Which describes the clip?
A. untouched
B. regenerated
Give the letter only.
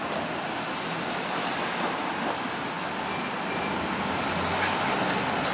A